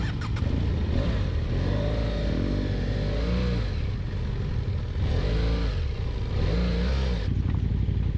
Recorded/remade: recorded